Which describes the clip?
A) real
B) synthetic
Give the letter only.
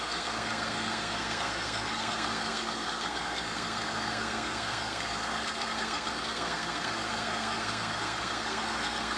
B